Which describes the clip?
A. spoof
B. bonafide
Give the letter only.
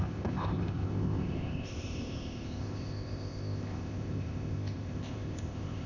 A